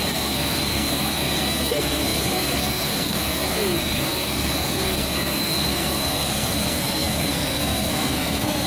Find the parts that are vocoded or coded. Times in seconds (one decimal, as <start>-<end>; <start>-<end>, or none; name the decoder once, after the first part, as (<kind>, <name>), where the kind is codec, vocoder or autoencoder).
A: 0.0-8.7 (codec, SNAC)